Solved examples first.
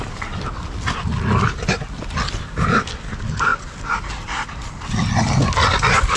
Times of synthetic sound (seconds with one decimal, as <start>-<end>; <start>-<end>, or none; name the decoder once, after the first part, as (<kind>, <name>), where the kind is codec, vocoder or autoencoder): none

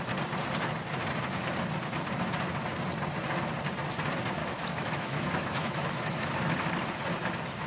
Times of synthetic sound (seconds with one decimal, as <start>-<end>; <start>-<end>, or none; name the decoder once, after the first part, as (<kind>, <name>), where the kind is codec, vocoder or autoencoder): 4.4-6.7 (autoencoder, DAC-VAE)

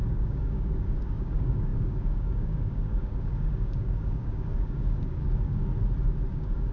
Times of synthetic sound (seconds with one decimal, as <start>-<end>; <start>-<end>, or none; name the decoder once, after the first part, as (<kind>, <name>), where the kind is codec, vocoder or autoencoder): 0.0-5.7 (codec, DAC); 6.3-6.7